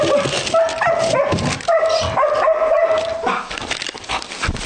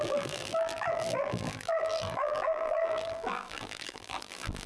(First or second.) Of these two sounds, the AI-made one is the second